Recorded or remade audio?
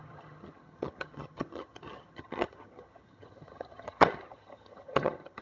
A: remade